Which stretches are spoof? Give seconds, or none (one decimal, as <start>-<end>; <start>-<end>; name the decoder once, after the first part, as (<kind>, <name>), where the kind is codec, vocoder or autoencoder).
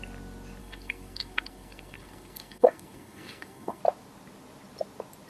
0.6-3.8 (codec, SNAC)